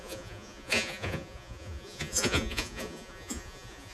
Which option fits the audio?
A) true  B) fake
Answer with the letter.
B